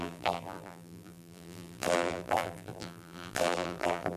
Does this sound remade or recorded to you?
remade